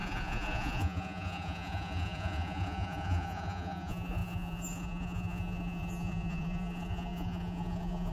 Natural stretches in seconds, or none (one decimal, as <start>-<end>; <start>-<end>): none